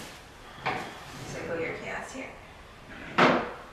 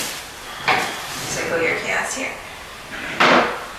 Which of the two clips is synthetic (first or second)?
first